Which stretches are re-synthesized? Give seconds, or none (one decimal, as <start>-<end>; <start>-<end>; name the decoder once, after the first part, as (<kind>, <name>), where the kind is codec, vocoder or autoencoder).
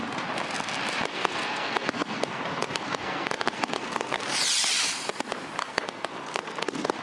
1.1-4.2 (codec, SNAC); 5.6-7.0